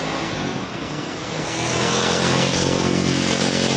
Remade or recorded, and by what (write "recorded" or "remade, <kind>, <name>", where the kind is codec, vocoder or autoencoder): remade, codec, SNAC